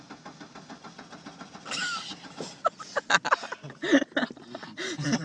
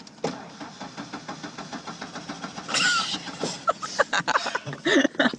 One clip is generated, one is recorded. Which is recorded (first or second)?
first